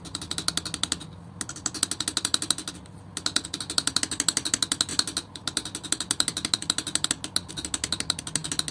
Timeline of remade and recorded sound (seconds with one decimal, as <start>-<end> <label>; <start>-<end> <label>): 0.0-8.7 recorded

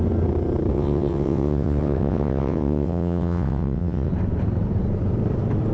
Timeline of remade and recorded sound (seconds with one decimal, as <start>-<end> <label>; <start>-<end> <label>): 0.0-0.7 recorded; 0.7-4.1 remade; 4.1-5.7 recorded